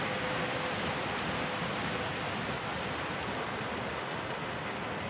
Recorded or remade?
recorded